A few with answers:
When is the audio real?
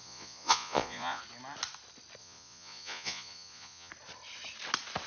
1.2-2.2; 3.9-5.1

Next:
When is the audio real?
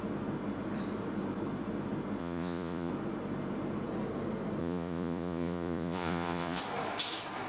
0.0-2.2; 2.9-4.6; 6.6-7.5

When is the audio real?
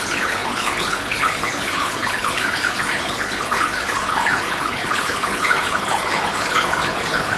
none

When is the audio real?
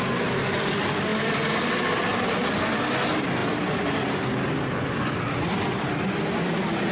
0.0-6.9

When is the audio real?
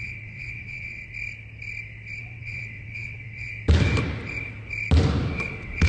1.0-2.2; 3.5-5.3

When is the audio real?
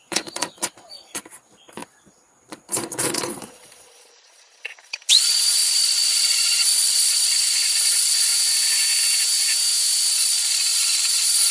8.3-10.1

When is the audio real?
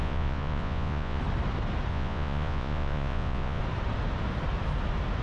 1.2-1.9; 3.6-5.2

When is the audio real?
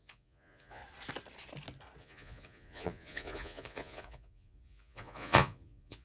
0.8-2.0